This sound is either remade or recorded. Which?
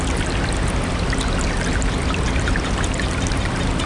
recorded